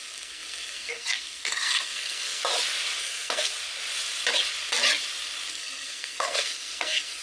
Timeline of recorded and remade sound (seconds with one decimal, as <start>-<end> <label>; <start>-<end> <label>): 0.0-2.4 remade; 2.4-3.0 recorded; 3.0-3.5 remade; 3.5-5.5 recorded; 5.5-7.2 remade